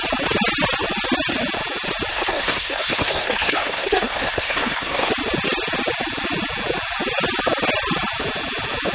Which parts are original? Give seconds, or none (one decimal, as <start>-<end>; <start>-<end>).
0.0-2.1; 5.1-8.9